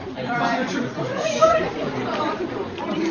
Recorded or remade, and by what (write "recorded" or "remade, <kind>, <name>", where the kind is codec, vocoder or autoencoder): remade, vocoder, BigVGAN v2